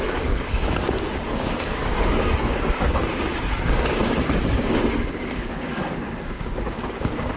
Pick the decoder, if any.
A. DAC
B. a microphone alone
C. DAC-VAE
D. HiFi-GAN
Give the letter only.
A